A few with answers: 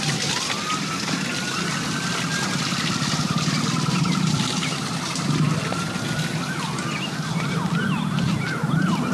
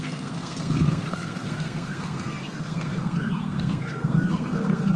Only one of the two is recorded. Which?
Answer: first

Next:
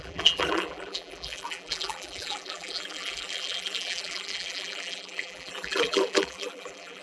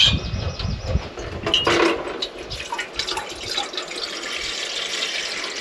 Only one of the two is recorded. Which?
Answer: second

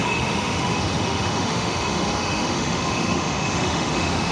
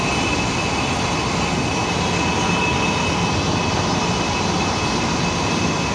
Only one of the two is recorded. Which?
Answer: second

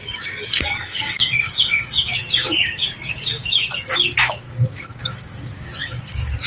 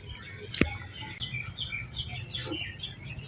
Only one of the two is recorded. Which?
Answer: second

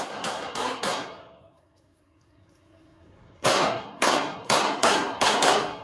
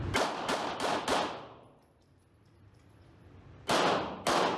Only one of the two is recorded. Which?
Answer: second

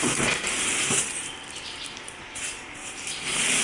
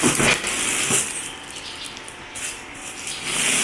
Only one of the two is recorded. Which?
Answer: second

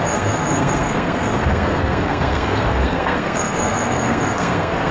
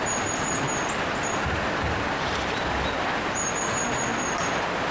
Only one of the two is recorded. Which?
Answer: second